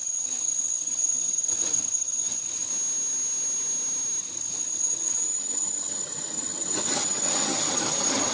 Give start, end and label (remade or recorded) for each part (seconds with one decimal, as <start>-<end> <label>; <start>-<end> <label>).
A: 0.0-2.7 remade; 2.7-4.2 recorded; 4.2-8.3 remade